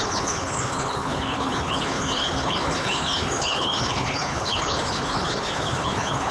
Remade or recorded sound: remade